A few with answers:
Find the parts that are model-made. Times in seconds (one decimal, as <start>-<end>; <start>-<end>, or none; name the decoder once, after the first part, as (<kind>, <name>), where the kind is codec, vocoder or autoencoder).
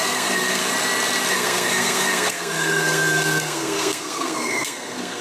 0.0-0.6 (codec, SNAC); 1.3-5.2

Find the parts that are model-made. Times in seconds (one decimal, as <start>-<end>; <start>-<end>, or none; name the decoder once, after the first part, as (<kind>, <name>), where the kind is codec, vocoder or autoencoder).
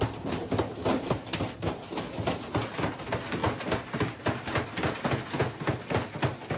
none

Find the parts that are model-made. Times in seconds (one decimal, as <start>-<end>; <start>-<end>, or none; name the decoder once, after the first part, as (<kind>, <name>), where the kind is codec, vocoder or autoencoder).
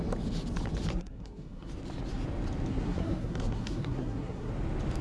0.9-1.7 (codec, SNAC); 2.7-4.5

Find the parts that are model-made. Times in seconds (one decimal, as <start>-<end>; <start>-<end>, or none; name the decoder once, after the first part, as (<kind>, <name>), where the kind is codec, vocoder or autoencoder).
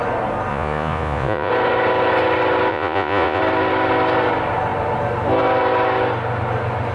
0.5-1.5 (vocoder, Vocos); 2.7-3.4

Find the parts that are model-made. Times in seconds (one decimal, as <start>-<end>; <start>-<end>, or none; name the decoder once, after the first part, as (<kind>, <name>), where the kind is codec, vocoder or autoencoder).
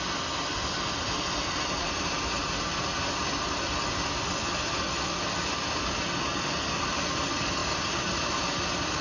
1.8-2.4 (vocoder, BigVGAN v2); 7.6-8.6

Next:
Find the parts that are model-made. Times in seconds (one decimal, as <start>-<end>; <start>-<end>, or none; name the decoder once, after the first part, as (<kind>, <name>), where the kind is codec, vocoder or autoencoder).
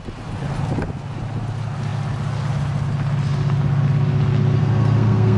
4.6-5.4 (codec, SNAC)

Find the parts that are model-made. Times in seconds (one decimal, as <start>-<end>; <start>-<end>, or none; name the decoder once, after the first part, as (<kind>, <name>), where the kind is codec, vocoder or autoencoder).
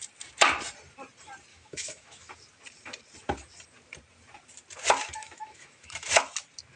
1.5-2.3 (autoencoder, DAC-VAE); 5.2-6.1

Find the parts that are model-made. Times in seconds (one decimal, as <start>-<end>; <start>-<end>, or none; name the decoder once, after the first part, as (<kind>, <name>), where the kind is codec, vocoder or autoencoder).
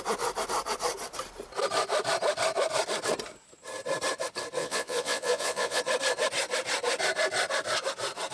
4.6-5.8 (vocoder, Vocos)